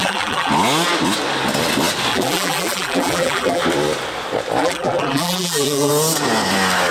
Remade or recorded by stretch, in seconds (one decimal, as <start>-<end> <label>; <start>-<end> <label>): 0.0-0.5 remade; 0.5-2.1 recorded; 2.1-3.6 remade; 3.6-4.6 recorded; 4.6-5.9 remade; 5.9-6.9 recorded